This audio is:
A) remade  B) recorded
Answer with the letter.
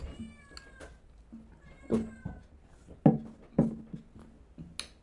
B